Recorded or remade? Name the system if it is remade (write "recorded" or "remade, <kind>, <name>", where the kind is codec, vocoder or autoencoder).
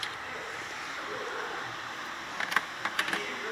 recorded